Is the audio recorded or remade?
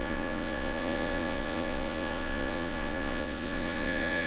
remade